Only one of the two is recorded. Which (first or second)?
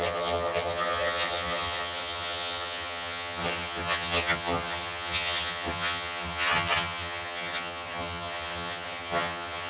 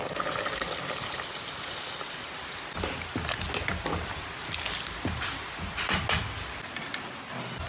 second